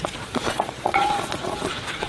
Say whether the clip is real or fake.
fake